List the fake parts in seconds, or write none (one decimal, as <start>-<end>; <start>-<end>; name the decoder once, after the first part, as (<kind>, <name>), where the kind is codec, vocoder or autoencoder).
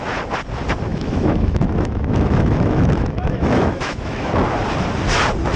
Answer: 0.9-4.3 (autoencoder, DAC-VAE)